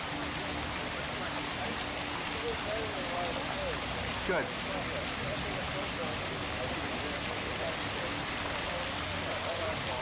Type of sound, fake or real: real